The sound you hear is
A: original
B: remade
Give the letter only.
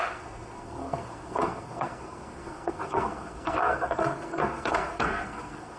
B